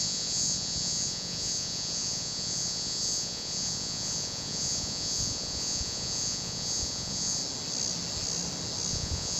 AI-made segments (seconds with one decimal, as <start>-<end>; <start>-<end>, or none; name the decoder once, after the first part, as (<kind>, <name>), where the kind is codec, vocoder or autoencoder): 0.0-7.4 (vocoder, Vocos); 8.9-9.4